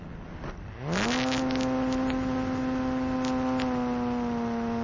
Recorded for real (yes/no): yes